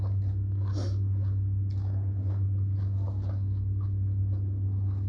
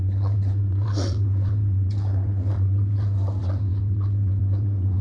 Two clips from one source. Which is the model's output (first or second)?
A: second